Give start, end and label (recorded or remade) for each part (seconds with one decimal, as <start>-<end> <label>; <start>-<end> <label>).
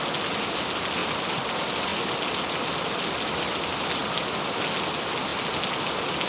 0.0-6.3 recorded